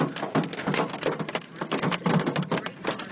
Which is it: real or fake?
real